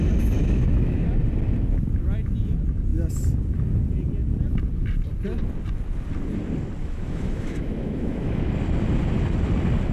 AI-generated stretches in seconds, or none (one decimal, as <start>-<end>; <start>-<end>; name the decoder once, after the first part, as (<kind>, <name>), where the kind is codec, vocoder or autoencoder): 0.4-1.0 (autoencoder, DAC-VAE); 6.8-8.4